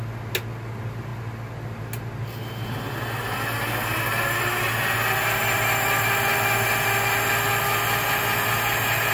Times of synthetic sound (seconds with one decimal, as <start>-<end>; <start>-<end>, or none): none